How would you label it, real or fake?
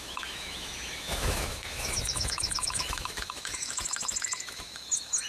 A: fake